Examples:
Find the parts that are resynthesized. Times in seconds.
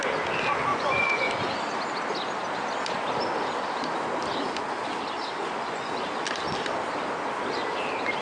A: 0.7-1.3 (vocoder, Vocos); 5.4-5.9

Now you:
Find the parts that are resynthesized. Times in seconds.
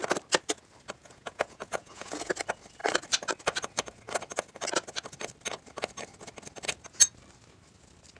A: 1.0-2.3 (vocoder, Vocos)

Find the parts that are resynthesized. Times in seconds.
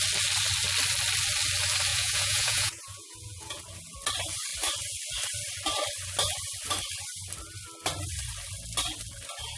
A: 1.9-3.6 (vocoder, Vocos)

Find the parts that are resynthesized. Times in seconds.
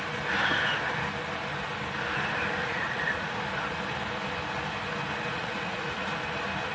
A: 2.6-3.4 (vocoder, Vocos); 5.3-6.1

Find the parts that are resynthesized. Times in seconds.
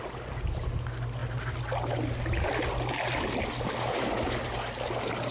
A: none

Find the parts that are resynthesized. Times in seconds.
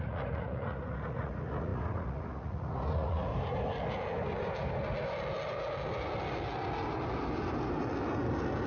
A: 0.0-3.3 (vocoder, Vocos)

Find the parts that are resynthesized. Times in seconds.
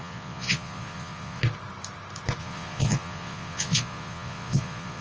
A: 0.0-1.4 (vocoder, Vocos); 2.4-5.0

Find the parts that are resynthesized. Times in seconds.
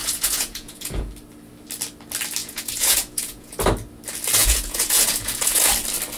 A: 0.0-1.1 (vocoder, Vocos); 2.4-3.6; 4.4-5.7